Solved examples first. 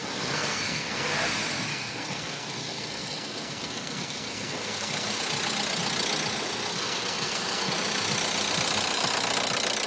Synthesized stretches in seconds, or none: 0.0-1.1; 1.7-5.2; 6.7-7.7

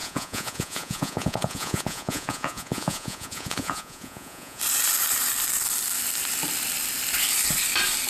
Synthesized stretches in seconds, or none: 0.0-4.6

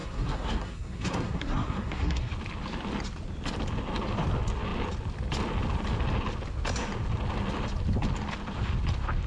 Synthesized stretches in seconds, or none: 0.0-2.3

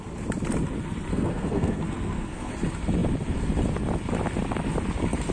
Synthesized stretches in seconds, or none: 1.1-2.5

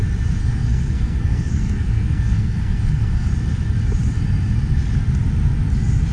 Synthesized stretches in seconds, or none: 0.4-3.3